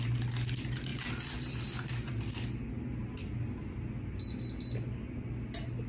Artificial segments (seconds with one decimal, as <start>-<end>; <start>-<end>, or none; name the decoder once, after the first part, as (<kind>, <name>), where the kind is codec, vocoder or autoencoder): none